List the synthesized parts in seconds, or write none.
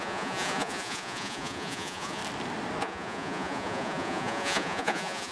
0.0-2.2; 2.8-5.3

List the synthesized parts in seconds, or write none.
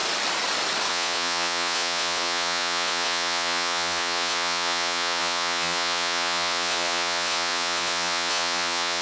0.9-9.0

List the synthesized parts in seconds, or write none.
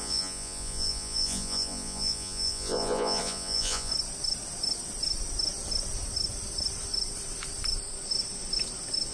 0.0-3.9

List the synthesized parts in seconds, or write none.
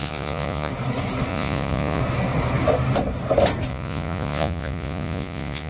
0.0-0.7; 1.3-2.0; 3.7-5.7